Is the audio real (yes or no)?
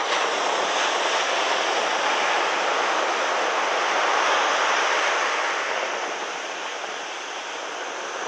yes